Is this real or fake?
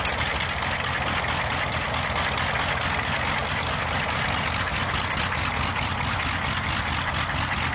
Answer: real